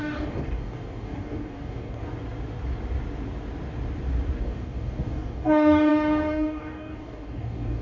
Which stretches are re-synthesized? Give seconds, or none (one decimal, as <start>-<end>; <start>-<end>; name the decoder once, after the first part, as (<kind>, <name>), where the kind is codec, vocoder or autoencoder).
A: 0.0-2.0 (codec, DAC); 4.4-7.8